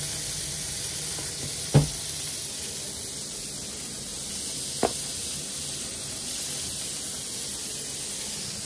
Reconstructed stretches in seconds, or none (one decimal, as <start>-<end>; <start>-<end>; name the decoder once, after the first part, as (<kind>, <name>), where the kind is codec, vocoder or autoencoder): none